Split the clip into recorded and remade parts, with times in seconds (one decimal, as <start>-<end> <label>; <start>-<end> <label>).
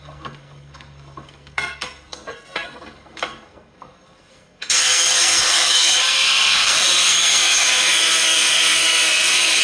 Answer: 0.0-9.6 remade